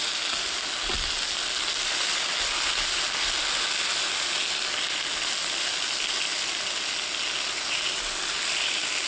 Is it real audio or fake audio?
real